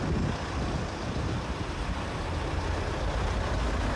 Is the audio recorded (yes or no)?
yes